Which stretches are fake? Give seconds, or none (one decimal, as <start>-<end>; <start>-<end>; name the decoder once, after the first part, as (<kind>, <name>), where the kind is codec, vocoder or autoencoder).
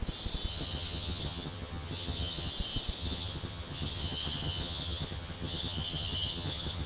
0.5-2.5 (vocoder, HiFi-GAN); 3.0-6.9